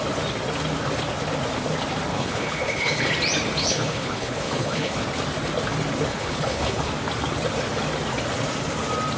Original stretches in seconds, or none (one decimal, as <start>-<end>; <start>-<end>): 0.0-2.1; 3.1-3.6; 5.0-6.1; 6.9-9.2